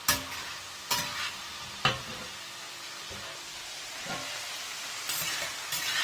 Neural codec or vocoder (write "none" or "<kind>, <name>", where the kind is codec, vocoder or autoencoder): none